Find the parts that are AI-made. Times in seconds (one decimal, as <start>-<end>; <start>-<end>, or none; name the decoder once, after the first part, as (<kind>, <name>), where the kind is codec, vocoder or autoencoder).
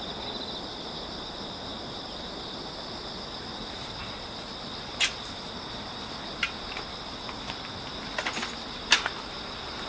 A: none